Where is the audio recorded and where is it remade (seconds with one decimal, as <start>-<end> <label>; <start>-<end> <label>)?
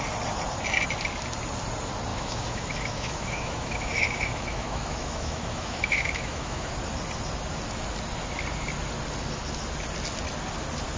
0.0-2.1 recorded; 2.1-6.7 remade; 6.7-11.0 recorded